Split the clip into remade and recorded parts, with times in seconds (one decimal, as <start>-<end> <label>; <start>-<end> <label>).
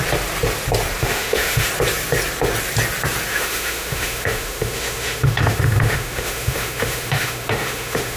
0.0-1.0 recorded; 1.0-1.7 remade; 1.7-3.3 recorded; 3.3-8.2 remade